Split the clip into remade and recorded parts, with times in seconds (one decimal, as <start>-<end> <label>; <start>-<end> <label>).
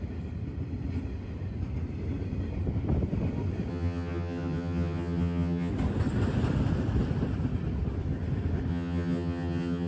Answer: 0.0-3.7 recorded; 3.7-5.7 remade; 5.7-8.7 recorded; 8.7-9.9 remade